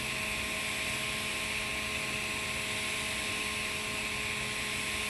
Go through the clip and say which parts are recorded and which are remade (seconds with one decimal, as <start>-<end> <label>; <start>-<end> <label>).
0.0-5.1 recorded